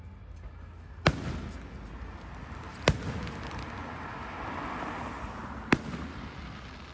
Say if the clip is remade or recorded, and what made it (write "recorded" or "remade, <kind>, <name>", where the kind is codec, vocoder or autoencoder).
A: recorded